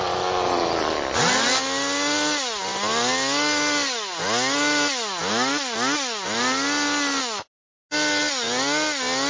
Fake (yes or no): no